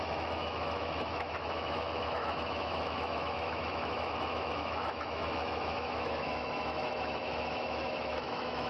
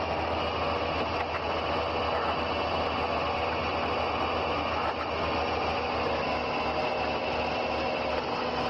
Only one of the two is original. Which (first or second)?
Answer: second